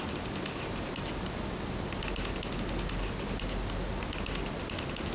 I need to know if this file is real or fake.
real